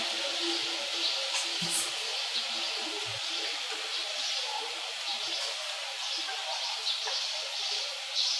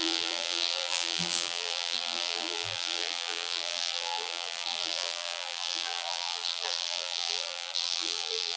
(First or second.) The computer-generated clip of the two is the second